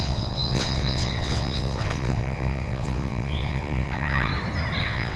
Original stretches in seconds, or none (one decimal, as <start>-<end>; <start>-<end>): 4.3-4.8